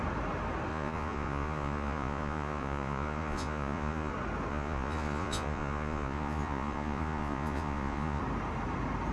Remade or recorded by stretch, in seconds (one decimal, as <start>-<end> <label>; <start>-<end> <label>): 0.0-0.7 recorded; 0.7-4.1 remade; 4.1-4.5 recorded; 4.5-8.2 remade; 8.2-9.1 recorded